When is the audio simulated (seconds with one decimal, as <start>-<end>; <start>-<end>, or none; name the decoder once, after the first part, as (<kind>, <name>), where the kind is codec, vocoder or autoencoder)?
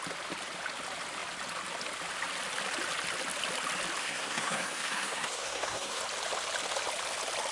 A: 4.0-6.0 (codec, SNAC)